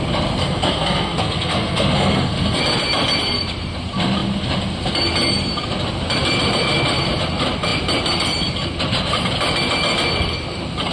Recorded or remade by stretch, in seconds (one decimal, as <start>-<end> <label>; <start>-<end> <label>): 0.0-0.4 recorded; 0.4-2.6 remade; 2.6-10.9 recorded